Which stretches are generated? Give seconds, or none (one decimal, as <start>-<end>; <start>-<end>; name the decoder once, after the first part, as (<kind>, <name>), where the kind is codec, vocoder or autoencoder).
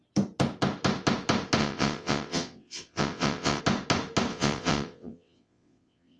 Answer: 1.6-3.6 (vocoder, WaveNeXt); 4.3-6.2